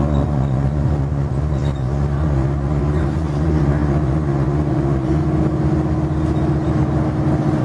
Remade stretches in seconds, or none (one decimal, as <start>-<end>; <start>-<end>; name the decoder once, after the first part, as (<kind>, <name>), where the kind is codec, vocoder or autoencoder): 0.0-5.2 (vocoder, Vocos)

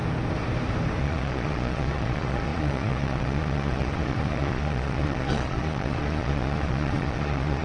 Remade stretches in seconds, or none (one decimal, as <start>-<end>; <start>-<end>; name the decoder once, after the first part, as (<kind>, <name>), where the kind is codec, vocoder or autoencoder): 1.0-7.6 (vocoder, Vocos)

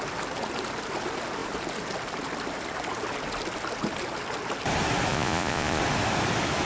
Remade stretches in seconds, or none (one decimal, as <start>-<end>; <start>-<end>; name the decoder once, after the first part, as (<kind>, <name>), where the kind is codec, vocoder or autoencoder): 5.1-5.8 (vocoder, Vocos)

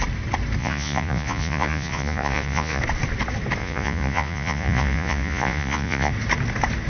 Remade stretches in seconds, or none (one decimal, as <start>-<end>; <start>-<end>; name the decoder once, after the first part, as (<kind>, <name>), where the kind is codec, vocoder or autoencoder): 0.6-2.8 (vocoder, Vocos); 3.6-6.1

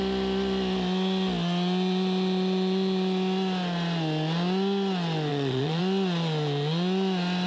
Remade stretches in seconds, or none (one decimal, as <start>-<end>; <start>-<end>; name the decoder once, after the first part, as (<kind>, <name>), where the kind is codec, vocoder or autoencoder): 5.3-5.8 (vocoder, Vocos)